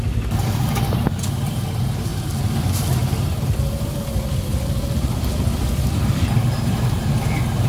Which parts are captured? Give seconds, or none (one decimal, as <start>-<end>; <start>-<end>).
0.0-2.1; 2.7-6.4; 7.1-7.7